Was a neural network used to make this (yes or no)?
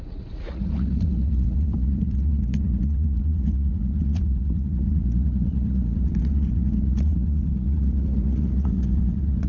yes